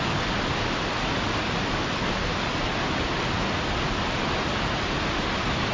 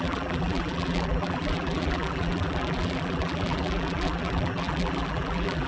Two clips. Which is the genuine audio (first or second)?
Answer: first